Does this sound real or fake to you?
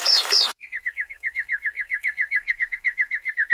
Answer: fake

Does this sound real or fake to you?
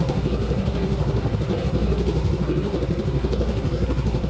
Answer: fake